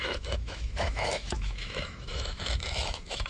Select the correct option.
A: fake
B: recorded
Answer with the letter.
A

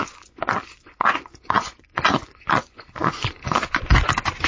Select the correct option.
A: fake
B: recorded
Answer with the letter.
A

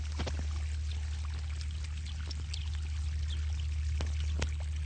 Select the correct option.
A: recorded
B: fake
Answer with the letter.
A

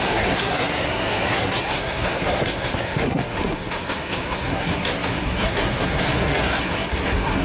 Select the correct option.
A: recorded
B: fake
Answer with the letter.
B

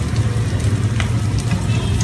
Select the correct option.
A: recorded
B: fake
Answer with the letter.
A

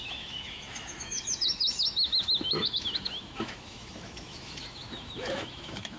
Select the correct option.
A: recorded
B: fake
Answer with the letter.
B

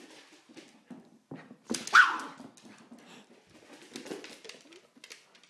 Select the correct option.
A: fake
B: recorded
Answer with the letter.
B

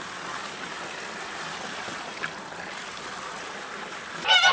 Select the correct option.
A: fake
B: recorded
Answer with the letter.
B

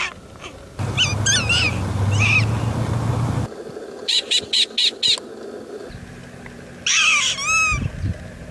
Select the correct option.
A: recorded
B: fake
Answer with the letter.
A